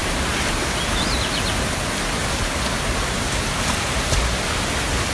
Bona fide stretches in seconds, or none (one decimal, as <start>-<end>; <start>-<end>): 1.5-2.2; 4.2-5.1